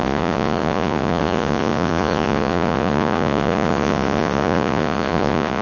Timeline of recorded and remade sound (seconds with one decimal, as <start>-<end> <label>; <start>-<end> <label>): 0.0-5.6 remade